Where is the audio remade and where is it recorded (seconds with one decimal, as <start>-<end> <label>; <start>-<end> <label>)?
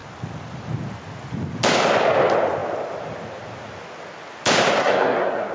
0.0-4.8 recorded; 4.8-5.5 remade